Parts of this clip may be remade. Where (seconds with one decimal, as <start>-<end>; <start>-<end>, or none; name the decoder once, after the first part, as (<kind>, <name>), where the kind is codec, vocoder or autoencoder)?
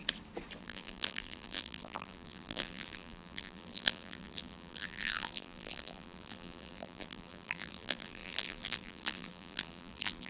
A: 0.6-10.3 (vocoder, BigVGAN v2)